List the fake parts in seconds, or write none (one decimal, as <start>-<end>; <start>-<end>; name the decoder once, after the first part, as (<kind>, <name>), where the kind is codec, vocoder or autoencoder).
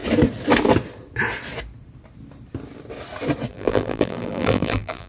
3.5-5.1 (vocoder, BigVGAN v2)